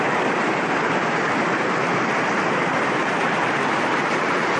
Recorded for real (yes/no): yes